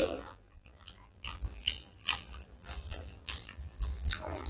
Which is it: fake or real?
fake